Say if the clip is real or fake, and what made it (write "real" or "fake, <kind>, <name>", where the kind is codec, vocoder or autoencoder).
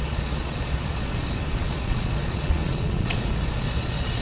fake, vocoder, Vocos